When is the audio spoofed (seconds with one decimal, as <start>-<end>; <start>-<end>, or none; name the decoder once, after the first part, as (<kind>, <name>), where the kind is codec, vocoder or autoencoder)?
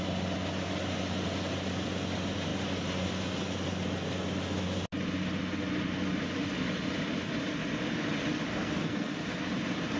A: 8.5-9.2 (codec, SNAC)